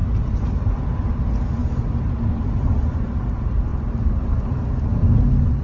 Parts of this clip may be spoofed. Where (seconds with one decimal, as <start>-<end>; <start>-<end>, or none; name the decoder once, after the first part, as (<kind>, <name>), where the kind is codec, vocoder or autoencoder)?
0.0-0.8 (vocoder, BigVGAN v2); 3.7-5.0